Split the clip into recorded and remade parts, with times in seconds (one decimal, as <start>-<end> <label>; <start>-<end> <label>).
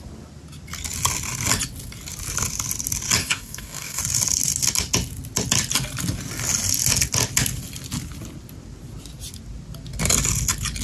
0.0-3.2 recorded; 3.2-4.0 remade; 4.0-10.8 recorded